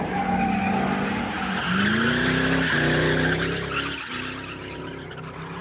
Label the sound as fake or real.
real